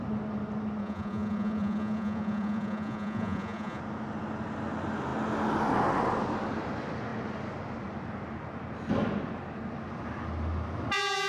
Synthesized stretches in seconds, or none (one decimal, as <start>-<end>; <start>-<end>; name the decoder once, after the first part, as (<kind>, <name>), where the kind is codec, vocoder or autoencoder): 0.8-3.8 (vocoder, Vocos)